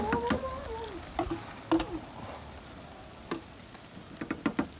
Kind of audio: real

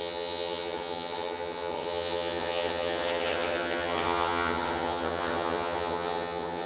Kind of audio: fake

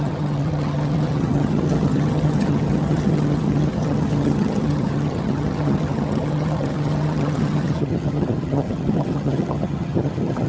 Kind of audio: fake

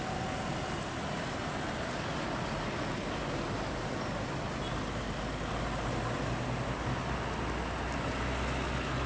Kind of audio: real